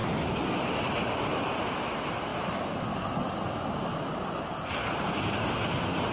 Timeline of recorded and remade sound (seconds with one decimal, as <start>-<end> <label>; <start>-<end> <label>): 0.0-6.1 recorded